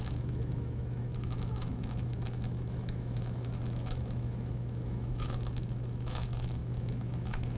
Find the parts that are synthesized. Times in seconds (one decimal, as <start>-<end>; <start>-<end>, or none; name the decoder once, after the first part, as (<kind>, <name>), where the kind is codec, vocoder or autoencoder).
0.0-7.6 (autoencoder, DAC-VAE)